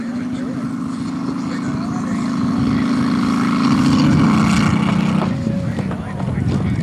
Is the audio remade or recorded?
recorded